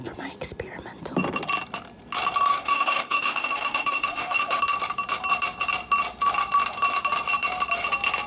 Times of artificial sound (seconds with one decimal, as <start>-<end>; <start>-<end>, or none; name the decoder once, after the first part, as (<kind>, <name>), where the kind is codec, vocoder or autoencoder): 2.5-4.6 (autoencoder, DAC-VAE)